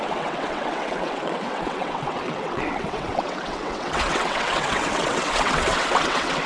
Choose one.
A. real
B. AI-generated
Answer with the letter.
B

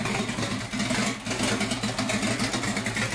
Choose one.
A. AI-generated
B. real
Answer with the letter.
B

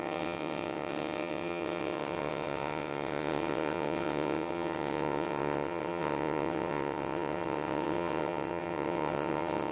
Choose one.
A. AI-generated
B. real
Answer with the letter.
A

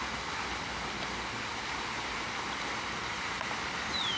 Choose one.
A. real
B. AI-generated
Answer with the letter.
A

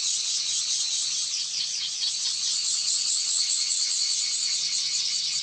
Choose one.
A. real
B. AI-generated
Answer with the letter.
B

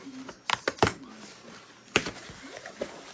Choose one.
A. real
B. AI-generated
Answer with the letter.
A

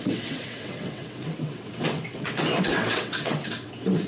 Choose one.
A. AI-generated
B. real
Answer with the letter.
A